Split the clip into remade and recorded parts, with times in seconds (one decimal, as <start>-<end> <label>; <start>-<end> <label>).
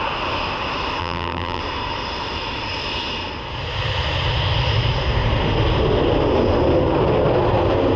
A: 0.0-1.0 recorded; 1.0-1.6 remade; 1.6-8.0 recorded